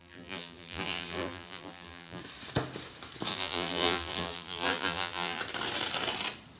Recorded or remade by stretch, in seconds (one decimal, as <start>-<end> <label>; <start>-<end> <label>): 0.0-2.2 remade; 2.2-3.3 recorded; 3.3-5.4 remade; 5.4-6.6 recorded